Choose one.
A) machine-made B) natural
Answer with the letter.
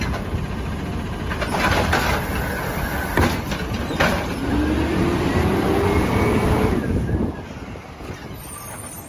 B